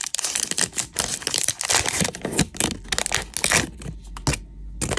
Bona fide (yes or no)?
yes